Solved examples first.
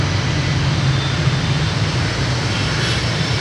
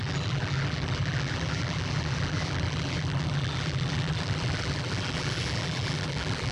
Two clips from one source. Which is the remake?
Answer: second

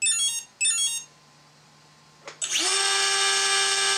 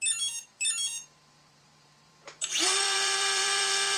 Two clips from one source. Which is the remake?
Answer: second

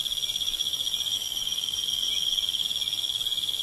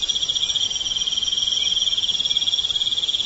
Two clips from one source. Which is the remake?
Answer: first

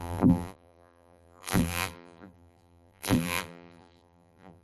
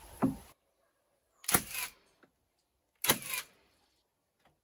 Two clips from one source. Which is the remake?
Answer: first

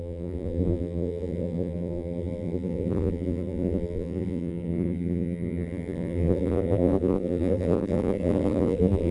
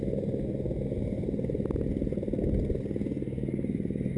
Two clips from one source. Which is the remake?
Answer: first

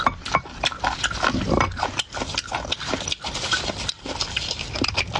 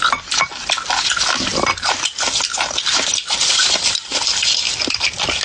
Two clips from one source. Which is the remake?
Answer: first